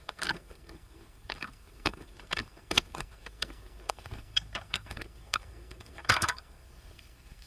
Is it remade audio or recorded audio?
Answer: remade